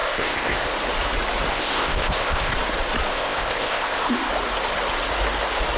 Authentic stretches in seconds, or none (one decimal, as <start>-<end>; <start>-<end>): 0.7-1.5; 2.5-3.1; 4.3-5.8